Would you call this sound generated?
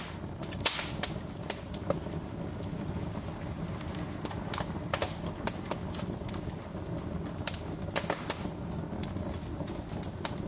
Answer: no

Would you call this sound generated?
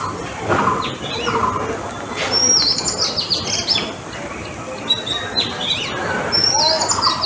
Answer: no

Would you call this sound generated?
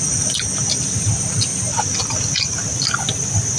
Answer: no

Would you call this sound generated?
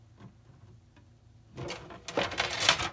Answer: no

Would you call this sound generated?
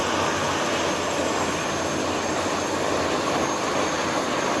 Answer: no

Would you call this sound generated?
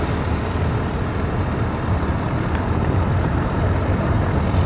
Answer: no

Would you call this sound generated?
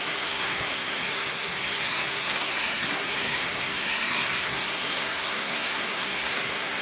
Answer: yes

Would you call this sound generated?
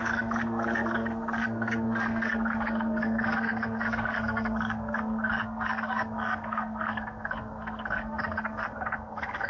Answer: yes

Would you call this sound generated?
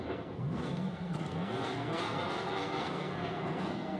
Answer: yes